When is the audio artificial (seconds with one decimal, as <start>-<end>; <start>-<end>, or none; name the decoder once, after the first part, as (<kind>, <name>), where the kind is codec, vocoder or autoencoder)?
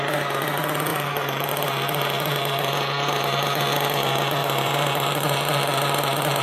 0.9-1.5 (vocoder, BigVGAN v2); 4.4-6.4